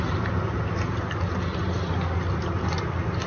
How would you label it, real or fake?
real